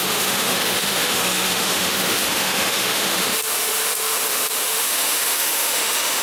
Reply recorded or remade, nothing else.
remade